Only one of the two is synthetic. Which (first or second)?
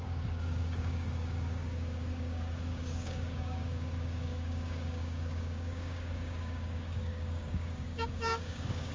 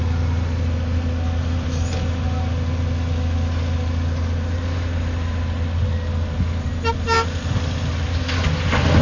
first